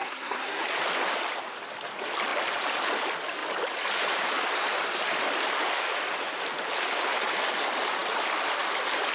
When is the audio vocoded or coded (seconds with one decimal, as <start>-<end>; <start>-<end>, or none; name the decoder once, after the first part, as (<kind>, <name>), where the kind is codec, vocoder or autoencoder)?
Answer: 0.0-0.6 (codec, SNAC)